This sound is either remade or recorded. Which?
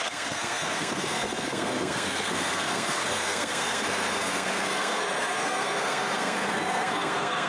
remade